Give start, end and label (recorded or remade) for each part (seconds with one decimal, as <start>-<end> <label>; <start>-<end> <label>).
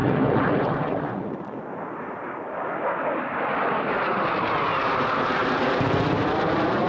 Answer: 0.0-1.6 remade; 1.6-6.9 recorded